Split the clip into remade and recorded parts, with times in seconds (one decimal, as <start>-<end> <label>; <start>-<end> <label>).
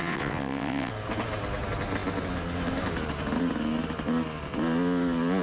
0.0-0.9 remade; 0.9-5.4 recorded